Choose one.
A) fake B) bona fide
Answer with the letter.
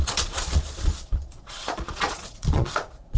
A